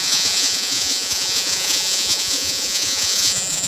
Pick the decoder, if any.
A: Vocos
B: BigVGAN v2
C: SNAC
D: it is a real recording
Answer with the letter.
A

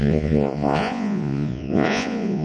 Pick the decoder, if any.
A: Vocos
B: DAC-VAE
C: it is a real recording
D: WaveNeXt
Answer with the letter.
A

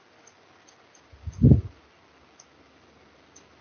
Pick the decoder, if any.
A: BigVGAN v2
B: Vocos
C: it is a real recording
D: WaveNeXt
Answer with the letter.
C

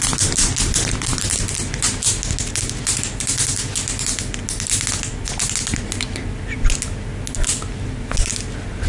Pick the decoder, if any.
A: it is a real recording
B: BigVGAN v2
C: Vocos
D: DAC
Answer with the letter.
A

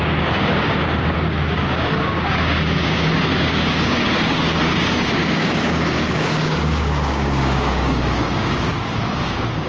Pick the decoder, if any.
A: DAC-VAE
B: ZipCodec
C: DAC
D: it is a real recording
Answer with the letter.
C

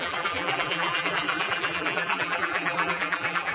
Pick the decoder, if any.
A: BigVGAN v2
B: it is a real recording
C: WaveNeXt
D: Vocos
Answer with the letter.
A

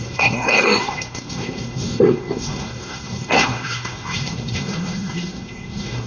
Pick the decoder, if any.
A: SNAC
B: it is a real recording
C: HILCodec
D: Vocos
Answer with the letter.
A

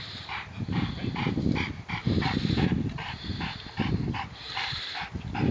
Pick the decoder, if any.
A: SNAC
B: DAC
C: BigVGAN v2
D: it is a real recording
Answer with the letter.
C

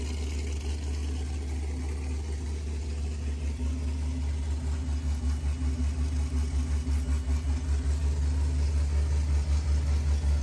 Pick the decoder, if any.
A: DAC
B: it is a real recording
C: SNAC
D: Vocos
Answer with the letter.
B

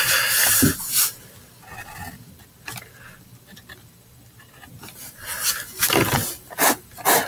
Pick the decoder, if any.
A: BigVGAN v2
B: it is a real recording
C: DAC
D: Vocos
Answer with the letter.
B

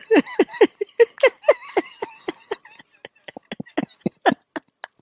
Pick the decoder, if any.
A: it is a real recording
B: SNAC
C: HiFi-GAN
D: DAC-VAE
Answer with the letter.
A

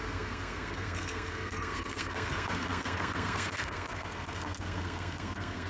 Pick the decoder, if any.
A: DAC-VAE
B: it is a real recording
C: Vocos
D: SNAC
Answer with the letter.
D